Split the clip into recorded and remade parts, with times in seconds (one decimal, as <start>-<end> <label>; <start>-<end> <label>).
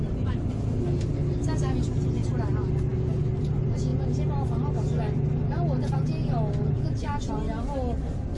0.0-8.4 recorded